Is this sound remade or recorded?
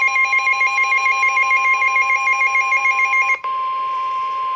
remade